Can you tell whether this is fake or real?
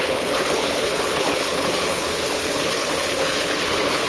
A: fake